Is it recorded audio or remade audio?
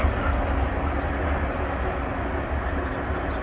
recorded